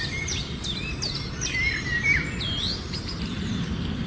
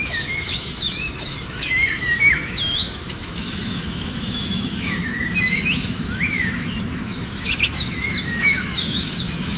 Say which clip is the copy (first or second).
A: second